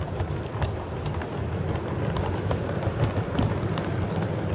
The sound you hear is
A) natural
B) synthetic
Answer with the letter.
A